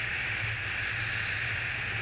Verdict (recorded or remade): recorded